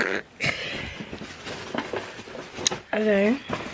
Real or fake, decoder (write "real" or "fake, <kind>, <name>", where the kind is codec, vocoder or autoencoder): real